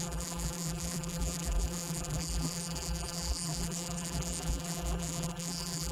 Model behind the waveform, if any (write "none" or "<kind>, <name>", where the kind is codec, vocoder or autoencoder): vocoder, BigVGAN v2